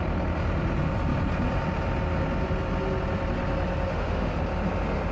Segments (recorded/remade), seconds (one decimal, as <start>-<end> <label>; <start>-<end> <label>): 0.0-3.9 recorded; 3.9-4.4 remade; 4.4-5.1 recorded